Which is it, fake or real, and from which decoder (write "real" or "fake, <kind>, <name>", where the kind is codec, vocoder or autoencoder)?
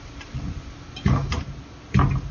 real